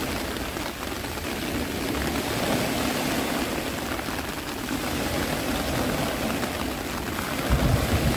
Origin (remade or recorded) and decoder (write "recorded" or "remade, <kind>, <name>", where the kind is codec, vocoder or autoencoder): recorded